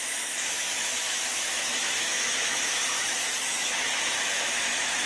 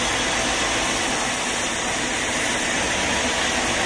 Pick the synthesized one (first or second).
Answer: first